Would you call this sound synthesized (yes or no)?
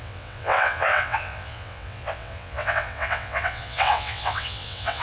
yes